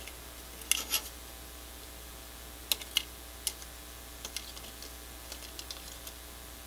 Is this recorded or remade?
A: recorded